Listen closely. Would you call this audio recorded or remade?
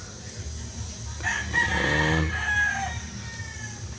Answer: recorded